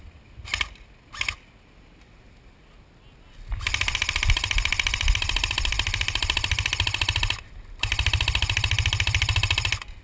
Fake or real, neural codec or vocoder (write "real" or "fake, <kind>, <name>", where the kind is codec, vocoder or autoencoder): real